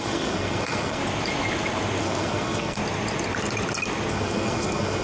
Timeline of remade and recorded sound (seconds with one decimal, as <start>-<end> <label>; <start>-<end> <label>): 0.0-1.0 remade; 1.0-2.0 recorded; 2.0-2.8 remade; 2.8-4.1 recorded; 4.1-5.0 remade